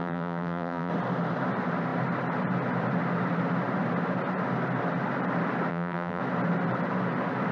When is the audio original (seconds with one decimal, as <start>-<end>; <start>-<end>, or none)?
0.9-5.7; 6.2-7.5

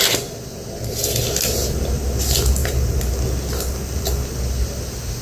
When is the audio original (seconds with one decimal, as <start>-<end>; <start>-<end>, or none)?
0.0-2.6; 3.1-5.2

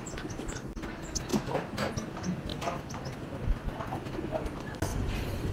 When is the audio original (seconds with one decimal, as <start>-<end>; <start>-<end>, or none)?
0.0-4.9

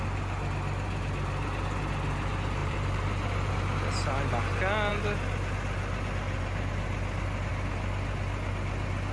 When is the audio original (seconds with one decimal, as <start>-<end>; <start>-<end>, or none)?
0.0-2.6; 3.5-9.1

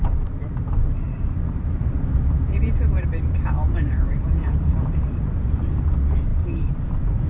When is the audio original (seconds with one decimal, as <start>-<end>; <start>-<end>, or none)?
none

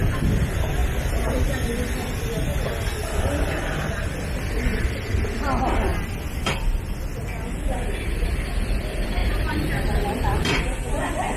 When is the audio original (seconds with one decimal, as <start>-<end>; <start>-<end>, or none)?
0.0-9.2

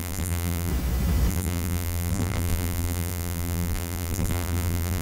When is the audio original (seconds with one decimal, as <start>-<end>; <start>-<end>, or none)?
0.7-1.3